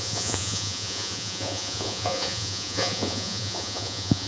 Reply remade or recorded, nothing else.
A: remade